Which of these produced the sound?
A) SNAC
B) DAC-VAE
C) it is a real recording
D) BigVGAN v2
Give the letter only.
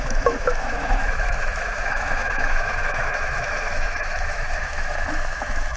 B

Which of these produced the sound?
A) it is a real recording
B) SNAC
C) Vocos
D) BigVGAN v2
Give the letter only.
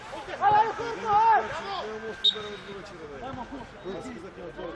A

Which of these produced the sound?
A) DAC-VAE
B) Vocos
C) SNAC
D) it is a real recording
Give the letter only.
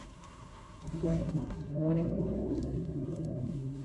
C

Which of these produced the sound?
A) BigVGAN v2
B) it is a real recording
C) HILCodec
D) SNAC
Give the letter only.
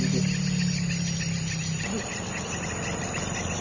B